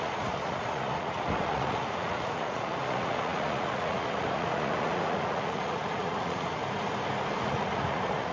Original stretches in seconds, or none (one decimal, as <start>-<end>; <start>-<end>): 6.6-7.4